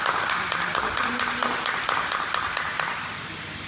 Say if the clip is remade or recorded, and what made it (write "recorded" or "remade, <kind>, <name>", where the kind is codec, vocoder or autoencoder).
remade, vocoder, BigVGAN v2